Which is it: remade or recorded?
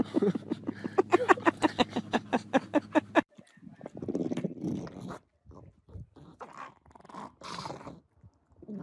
recorded